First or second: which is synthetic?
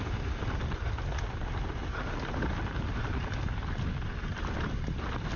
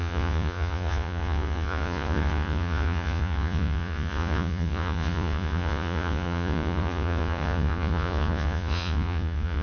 second